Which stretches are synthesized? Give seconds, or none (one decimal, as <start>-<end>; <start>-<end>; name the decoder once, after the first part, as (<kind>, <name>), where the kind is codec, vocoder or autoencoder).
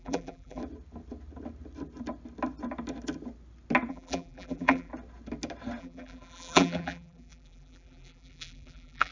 0.0-0.6 (vocoder, BigVGAN v2); 3.9-4.9; 5.8-9.1